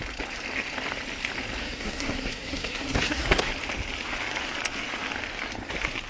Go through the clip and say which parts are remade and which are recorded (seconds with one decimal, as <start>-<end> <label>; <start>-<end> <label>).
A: 0.0-1.6 recorded; 1.6-3.5 remade; 3.5-6.1 recorded